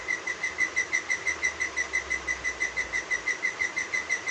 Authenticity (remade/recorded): recorded